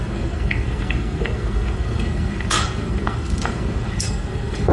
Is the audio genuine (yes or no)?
no